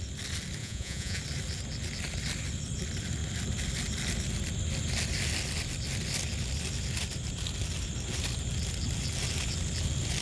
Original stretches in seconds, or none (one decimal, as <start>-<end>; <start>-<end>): 0.0-0.6; 1.2-10.2